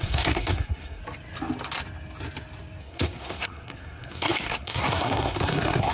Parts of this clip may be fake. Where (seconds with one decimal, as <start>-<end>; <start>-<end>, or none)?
0.0-1.0; 2.8-5.9